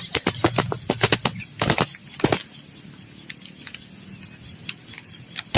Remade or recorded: recorded